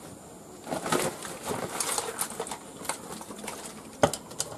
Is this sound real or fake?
real